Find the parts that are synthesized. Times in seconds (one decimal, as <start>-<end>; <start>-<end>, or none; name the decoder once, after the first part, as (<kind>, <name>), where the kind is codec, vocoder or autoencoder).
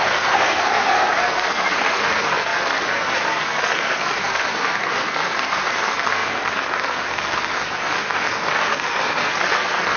0.0-10.0 (codec, SNAC)